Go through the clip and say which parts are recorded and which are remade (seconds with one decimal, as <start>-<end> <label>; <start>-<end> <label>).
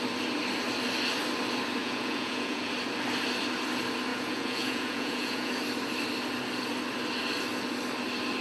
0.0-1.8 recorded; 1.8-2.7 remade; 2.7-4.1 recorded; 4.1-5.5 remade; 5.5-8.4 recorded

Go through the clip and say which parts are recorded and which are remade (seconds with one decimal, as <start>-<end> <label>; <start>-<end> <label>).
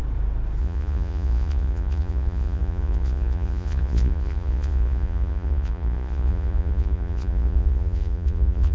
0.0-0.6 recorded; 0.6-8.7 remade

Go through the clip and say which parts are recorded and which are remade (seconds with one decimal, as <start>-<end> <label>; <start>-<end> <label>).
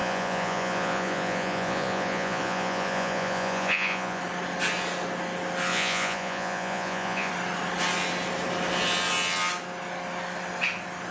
0.0-4.2 remade; 4.2-5.7 recorded; 5.7-7.3 remade; 7.3-11.1 recorded